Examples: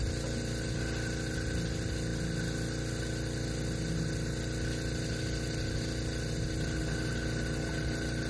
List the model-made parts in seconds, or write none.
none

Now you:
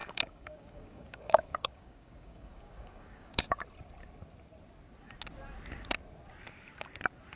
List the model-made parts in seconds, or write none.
0.0-3.6